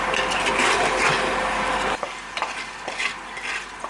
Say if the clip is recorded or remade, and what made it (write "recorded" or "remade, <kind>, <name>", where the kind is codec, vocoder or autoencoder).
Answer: recorded